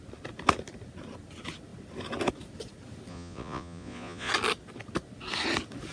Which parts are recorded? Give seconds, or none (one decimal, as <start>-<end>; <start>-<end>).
0.0-3.1; 4.3-5.9